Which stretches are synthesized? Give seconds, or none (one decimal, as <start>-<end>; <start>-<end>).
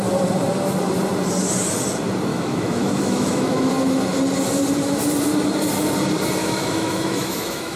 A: 2.3-3.7; 6.4-7.8